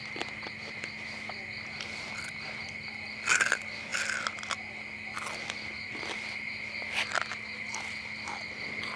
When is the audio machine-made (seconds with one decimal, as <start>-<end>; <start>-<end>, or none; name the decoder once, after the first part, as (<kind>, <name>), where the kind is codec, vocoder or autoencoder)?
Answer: none